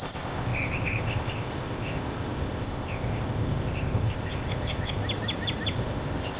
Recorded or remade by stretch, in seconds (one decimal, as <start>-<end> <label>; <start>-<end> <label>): 0.0-5.0 remade; 5.0-5.7 recorded; 5.7-6.4 remade